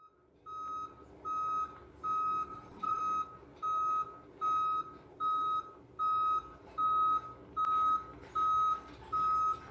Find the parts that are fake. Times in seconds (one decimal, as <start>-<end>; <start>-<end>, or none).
2.5-3.0